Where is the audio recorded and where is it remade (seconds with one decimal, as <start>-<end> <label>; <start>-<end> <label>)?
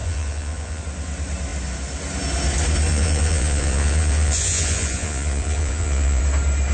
0.0-0.8 remade; 0.8-2.9 recorded; 2.9-6.2 remade; 6.2-6.7 recorded